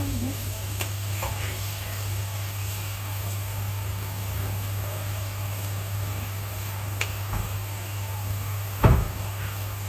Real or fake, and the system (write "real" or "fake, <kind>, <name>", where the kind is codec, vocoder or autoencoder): fake, codec, DAC